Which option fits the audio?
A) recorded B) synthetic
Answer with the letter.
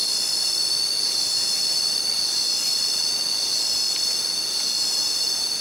A